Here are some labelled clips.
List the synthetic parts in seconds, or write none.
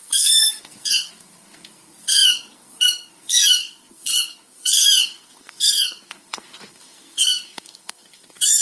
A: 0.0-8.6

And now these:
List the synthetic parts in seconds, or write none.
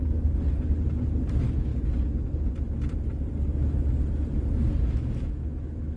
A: 1.2-1.7; 4.8-6.0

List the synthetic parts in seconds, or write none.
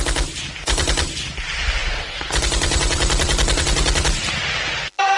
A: 4.4-5.2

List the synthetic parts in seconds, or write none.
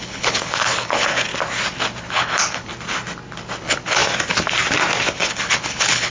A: 0.0-1.3; 2.0-2.7; 3.6-4.0; 5.1-6.1